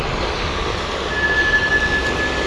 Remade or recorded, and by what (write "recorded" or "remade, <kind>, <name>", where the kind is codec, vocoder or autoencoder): recorded